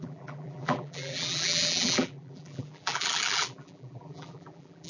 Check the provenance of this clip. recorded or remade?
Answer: remade